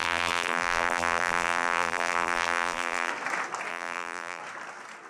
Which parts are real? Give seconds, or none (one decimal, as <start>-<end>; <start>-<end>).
3.1-3.7; 4.4-5.1